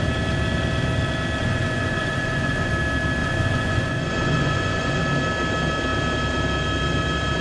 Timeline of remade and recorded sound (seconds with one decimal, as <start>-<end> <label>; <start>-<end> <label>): 0.0-1.4 recorded; 1.4-2.7 remade; 2.7-3.2 recorded; 3.2-5.0 remade; 5.0-7.4 recorded